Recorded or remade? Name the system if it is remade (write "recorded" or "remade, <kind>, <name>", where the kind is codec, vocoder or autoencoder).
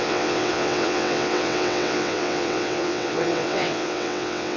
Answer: remade, vocoder, WaveNeXt